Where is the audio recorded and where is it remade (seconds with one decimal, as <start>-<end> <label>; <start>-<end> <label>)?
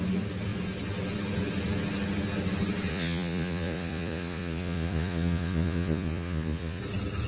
0.0-2.9 recorded; 2.9-6.8 remade; 6.8-7.3 recorded